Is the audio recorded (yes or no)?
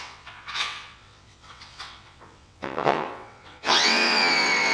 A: no